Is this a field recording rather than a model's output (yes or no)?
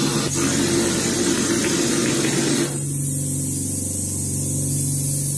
yes